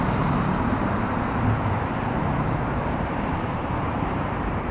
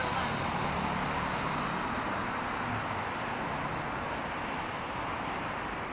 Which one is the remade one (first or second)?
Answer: first